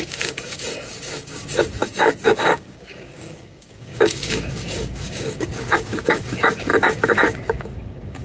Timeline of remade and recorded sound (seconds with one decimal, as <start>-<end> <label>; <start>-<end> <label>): 0.0-8.2 remade